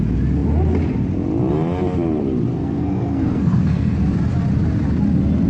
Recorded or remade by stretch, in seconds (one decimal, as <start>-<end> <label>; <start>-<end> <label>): 0.0-2.5 recorded; 2.5-4.0 remade; 4.0-5.5 recorded

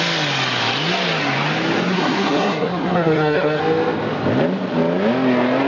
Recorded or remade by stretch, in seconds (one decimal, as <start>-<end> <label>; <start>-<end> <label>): 0.0-1.9 recorded; 1.9-3.6 remade; 3.6-5.7 recorded

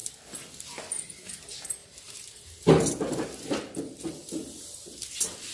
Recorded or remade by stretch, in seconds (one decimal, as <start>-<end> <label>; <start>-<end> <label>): 0.0-5.5 recorded

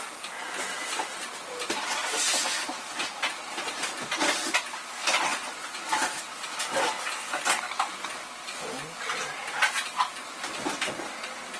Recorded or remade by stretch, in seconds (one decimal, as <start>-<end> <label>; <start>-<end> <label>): 0.0-11.6 recorded

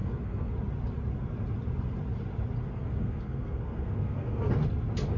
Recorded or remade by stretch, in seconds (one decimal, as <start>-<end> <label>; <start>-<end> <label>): 0.0-0.5 remade; 0.5-2.7 recorded; 2.7-4.5 remade; 4.5-5.2 recorded